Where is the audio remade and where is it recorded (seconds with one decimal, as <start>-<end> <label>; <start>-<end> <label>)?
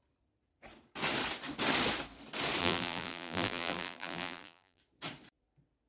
0.0-2.6 recorded; 2.6-4.8 remade; 4.8-5.9 recorded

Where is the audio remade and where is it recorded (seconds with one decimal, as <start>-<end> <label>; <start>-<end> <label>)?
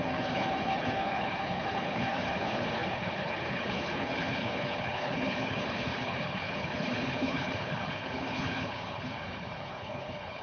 0.0-10.4 remade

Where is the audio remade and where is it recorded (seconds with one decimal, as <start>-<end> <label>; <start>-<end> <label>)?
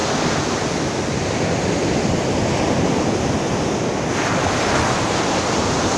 0.0-6.0 recorded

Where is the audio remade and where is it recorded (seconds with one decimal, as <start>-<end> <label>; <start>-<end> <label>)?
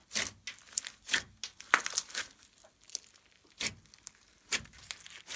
0.0-5.4 recorded